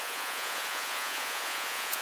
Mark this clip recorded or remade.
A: remade